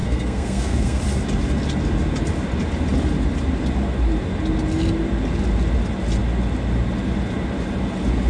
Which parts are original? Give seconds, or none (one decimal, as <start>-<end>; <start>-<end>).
1.0-8.3